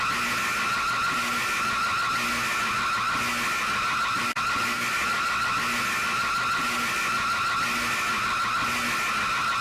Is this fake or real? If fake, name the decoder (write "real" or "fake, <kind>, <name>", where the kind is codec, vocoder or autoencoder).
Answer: real